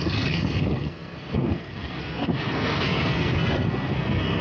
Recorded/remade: remade